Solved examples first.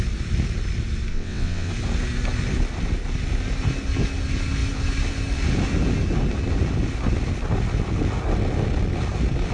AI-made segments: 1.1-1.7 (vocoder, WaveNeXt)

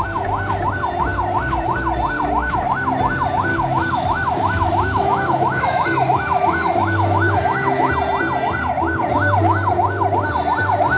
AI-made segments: 3.5-7.9 (autoencoder, DAC-VAE)

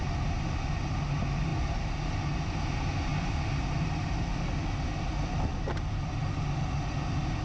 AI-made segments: none

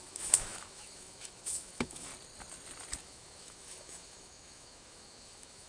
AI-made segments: 0.0-2.1 (autoencoder, DAC-VAE); 3.0-5.7

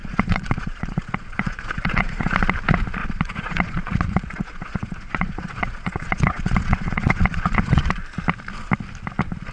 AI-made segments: 0.0-2.3 (vocoder, Vocos); 3.0-7.8

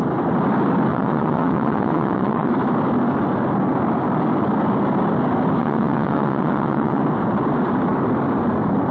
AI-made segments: 0.9-2.5 (vocoder, WaveNeXt); 5.6-7.0

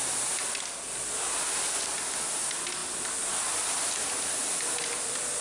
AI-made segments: none

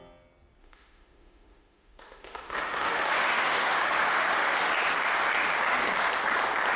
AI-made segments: 0.6-4.7 (autoencoder, DAC-VAE)